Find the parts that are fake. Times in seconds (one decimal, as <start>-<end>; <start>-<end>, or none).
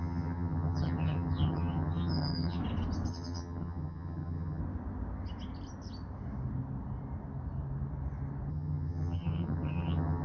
0.0-2.6; 3.1-4.6; 8.5-10.2